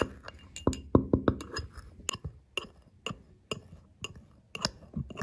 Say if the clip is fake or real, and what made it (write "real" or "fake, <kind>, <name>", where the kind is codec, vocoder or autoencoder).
real